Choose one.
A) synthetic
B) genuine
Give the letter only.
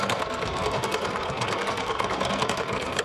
A